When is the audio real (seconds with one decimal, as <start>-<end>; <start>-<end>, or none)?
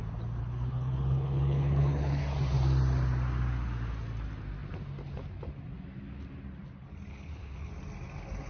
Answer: 0.0-0.4; 2.2-7.1; 7.7-8.5